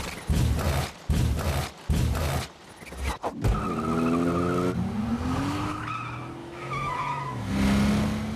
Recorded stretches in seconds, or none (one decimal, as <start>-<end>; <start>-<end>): 0.0-6.4; 7.5-8.4